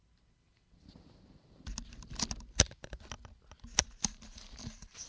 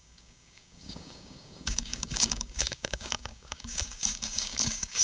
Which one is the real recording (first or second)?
first